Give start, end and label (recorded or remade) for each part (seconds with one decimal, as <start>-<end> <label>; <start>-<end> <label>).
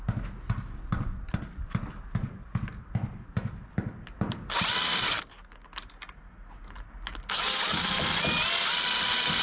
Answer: 0.0-1.5 recorded; 1.5-2.6 remade; 2.6-9.4 recorded